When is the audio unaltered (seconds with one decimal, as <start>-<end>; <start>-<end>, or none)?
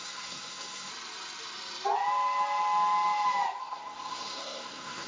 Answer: 0.9-3.6